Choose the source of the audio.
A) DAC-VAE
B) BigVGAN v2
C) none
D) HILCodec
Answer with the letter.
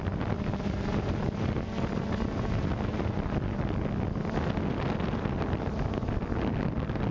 C